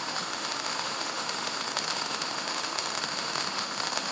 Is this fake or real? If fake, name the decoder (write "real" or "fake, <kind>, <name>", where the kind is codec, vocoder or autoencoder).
fake, autoencoder, DAC-VAE